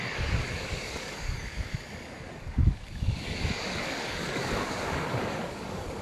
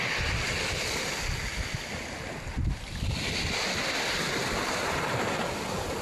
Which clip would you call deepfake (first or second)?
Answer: first